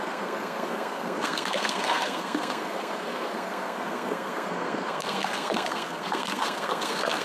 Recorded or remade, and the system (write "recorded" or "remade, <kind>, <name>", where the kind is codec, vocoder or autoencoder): remade, codec, SNAC